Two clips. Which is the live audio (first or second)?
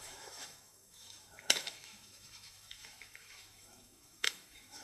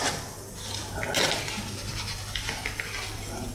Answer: second